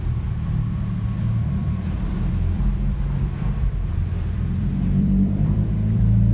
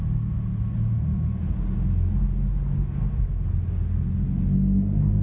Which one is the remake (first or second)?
first